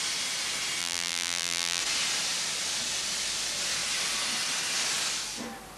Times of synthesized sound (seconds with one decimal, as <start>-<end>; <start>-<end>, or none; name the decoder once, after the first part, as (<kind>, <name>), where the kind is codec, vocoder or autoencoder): 0.8-1.8 (vocoder, BigVGAN v2)